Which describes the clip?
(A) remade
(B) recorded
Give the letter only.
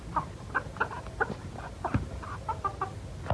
B